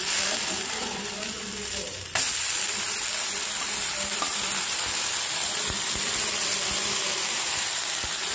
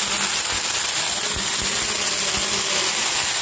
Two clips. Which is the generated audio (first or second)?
first